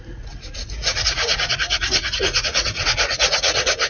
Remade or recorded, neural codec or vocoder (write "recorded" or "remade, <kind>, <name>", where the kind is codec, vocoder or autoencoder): remade, vocoder, Vocos